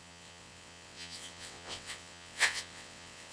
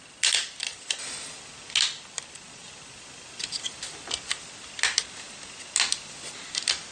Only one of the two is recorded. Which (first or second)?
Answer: second